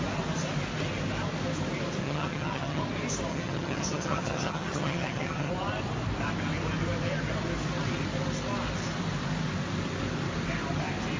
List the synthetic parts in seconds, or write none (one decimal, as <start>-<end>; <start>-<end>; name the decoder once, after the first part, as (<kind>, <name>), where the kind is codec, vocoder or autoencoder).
2.0-2.8 (vocoder, HiFi-GAN); 3.3-5.5